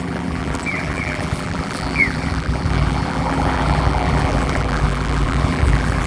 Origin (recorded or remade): remade